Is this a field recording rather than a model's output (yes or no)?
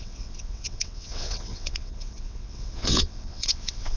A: no